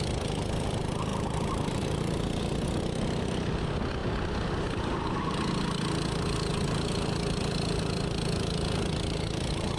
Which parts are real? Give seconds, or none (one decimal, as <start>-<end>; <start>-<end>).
0.0-1.1; 2.0-9.8